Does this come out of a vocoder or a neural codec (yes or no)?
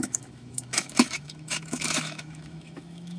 yes